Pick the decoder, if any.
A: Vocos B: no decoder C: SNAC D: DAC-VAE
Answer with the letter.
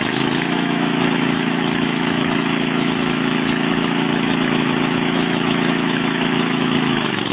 D